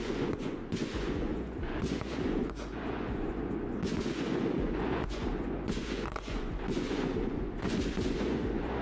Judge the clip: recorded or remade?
remade